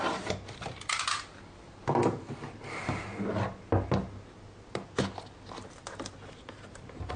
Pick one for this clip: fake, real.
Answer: real